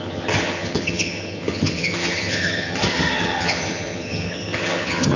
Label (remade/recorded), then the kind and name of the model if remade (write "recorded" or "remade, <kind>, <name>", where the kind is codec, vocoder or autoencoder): remade, vocoder, HiFi-GAN